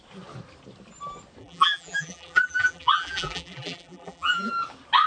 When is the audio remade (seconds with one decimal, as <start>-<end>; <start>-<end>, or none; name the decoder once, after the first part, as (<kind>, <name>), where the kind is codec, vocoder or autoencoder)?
1.4-4.5 (vocoder, BigVGAN v2)